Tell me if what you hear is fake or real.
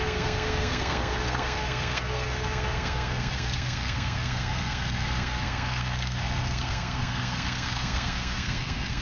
fake